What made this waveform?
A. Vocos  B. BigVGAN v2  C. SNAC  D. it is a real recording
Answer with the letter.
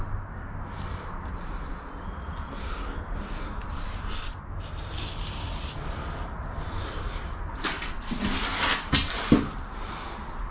D